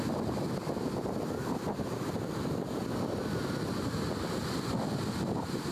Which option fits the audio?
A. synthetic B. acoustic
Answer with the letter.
B